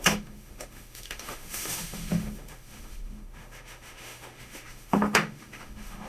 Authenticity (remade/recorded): remade